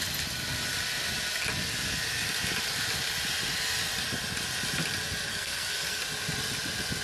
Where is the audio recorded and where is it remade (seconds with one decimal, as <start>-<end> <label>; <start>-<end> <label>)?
0.0-5.3 recorded; 5.3-6.0 remade; 6.0-7.0 recorded